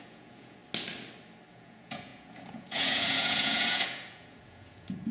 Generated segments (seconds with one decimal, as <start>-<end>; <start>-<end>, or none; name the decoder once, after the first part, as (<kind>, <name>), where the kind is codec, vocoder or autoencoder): 0.0-0.6 (vocoder, Vocos); 1.5-5.1